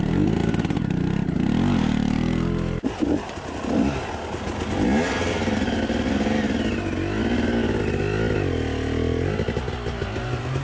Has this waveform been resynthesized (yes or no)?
no